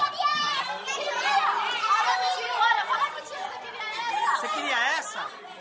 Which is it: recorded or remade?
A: recorded